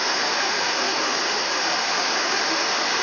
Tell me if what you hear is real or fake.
fake